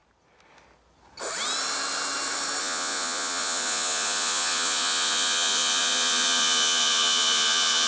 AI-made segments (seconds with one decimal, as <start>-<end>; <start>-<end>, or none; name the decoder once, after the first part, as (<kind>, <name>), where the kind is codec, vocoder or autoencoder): 2.6-7.9 (vocoder, Vocos)